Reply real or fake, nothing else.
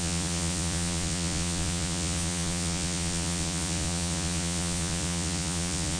fake